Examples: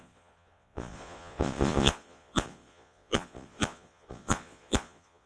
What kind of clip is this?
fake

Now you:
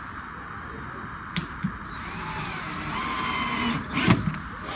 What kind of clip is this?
real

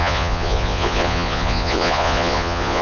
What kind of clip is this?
fake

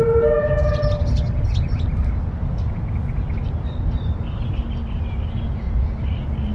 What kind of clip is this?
real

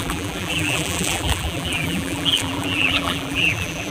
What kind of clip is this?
fake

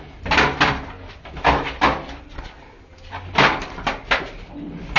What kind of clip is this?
real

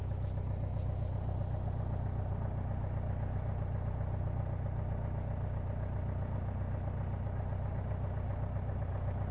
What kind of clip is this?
real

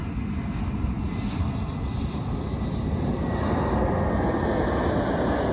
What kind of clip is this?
real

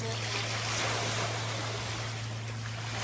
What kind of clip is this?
real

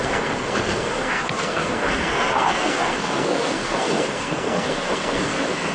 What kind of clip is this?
fake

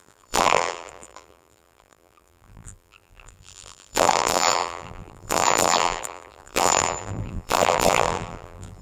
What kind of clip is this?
fake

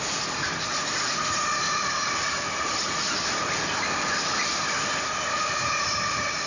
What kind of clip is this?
real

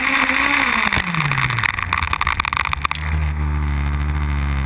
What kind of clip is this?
real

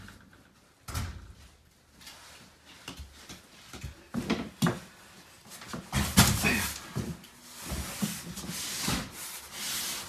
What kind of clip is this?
real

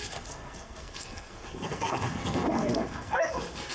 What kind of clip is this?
fake